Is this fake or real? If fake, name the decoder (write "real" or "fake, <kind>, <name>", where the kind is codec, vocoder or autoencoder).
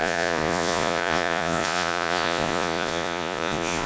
fake, vocoder, Vocos